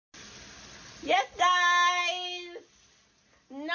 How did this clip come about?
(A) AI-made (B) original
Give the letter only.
B